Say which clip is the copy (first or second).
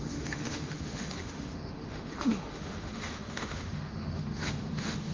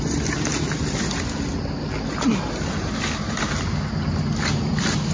first